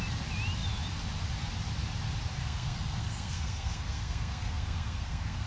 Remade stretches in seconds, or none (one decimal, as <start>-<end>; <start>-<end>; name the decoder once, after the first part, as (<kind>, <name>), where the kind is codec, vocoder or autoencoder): 2.4-5.5 (codec, SNAC)